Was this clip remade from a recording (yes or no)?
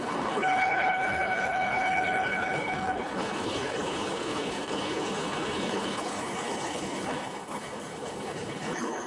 yes